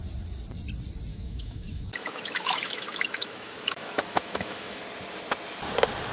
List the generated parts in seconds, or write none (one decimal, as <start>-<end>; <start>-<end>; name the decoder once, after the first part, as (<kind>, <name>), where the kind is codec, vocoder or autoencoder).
1.1-4.8 (autoencoder, DAC-VAE)